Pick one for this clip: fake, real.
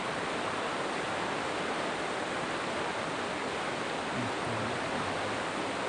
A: real